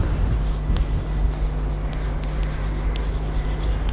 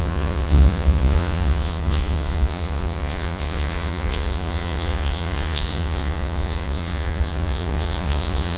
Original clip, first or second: first